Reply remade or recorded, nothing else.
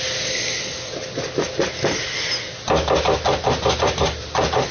recorded